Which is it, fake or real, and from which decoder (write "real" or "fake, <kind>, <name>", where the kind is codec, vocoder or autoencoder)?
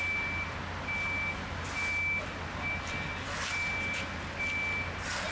real